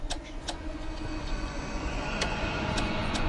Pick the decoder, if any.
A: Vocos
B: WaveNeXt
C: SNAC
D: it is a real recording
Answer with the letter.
A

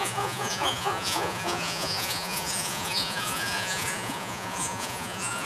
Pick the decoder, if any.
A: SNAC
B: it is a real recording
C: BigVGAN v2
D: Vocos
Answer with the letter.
D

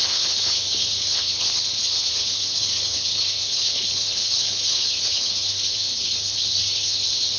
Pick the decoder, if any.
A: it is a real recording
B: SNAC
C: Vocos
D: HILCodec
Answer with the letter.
D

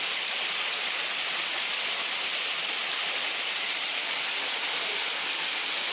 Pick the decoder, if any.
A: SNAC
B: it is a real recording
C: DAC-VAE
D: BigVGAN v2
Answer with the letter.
B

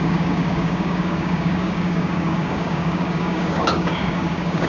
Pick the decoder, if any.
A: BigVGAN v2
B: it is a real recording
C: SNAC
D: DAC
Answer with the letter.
D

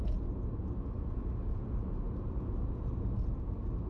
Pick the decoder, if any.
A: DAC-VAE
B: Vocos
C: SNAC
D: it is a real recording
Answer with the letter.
D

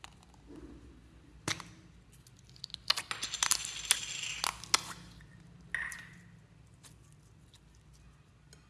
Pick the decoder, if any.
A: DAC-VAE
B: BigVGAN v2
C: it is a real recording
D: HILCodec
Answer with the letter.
C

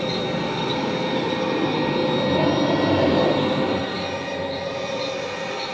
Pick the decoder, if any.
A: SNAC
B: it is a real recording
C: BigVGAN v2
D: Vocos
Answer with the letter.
B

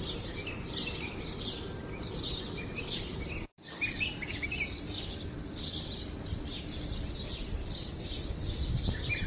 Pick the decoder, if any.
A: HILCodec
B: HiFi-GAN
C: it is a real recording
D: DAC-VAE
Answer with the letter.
C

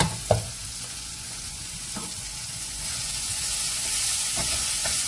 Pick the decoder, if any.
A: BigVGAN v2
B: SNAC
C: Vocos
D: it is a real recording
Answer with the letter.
C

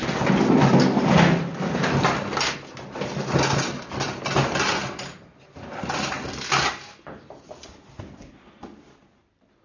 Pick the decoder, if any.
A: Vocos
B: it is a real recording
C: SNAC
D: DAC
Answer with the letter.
B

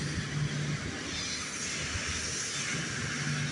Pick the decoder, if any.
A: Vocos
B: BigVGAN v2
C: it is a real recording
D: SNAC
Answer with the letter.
C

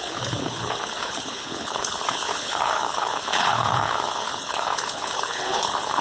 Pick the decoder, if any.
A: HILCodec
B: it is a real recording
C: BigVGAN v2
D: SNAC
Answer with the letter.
A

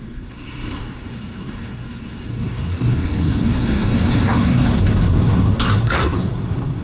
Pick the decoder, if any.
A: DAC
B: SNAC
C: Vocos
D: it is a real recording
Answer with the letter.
B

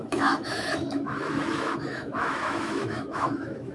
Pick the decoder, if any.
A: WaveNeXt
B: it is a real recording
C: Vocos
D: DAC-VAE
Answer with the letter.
D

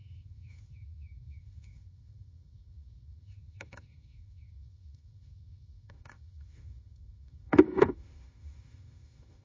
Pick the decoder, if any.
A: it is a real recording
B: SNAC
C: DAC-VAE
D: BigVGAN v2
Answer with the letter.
C